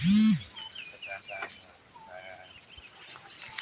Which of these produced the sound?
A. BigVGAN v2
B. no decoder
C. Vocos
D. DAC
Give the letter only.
B